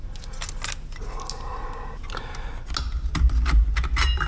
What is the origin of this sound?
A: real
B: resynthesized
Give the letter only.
A